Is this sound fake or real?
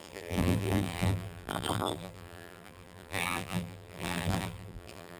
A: fake